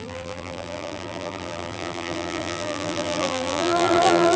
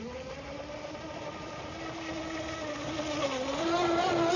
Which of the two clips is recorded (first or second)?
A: second